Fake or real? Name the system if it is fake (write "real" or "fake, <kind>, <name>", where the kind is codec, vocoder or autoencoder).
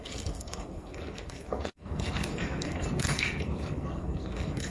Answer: fake, codec, SNAC